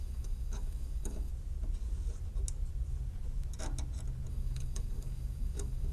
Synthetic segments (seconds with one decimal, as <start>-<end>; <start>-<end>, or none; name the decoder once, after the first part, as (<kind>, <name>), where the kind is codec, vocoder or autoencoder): 0.0-1.3 (codec, DAC); 4.3-5.9